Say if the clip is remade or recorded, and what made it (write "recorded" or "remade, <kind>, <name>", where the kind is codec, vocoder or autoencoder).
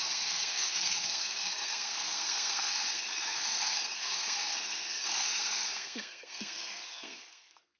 remade, codec, SNAC